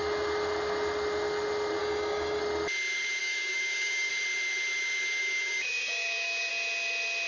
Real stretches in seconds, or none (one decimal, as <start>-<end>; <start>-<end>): 0.0-1.8; 2.4-3.2; 4.1-5.2; 6.5-7.3